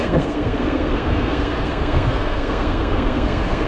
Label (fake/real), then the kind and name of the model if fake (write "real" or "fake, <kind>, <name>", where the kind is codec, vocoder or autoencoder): fake, codec, SNAC